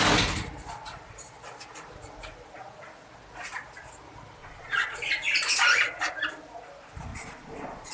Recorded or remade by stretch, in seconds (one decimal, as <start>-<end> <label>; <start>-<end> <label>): 0.0-4.4 recorded; 4.4-5.1 remade; 5.1-7.1 recorded; 7.1-7.9 remade

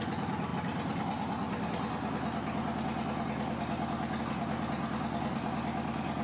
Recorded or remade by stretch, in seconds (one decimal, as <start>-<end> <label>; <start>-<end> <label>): 0.0-6.2 recorded

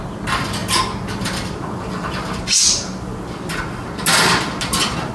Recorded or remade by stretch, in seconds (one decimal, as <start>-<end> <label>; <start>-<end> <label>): 0.0-5.1 recorded

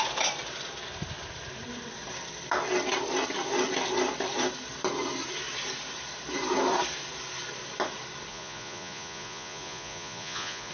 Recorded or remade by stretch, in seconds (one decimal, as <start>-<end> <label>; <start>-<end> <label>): 0.0-8.3 recorded; 8.3-10.7 remade

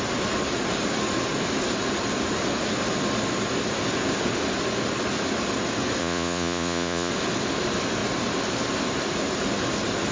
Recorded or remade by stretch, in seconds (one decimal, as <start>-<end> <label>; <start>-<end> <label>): 0.0-6.0 recorded; 6.0-7.1 remade; 7.1-10.1 recorded